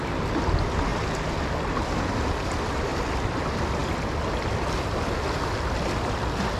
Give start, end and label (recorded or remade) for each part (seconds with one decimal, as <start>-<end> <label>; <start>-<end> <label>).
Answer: 0.0-6.6 recorded